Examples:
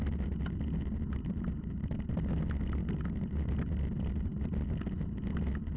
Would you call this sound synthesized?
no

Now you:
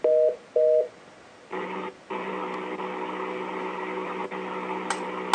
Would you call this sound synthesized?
no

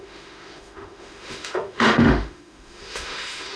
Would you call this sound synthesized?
yes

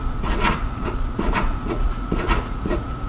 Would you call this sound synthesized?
yes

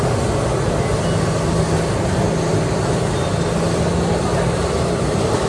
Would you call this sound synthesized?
no